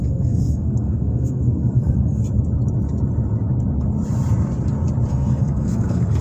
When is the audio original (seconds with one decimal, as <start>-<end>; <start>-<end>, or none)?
2.2-5.1